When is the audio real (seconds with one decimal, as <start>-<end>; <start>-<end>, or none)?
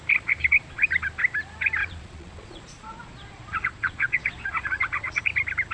0.0-1.8; 5.2-5.7